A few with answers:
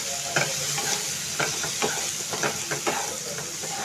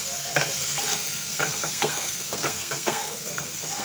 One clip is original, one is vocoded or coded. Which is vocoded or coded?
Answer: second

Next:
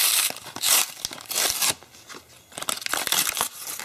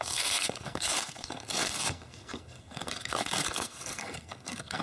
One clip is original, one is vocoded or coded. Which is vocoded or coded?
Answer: second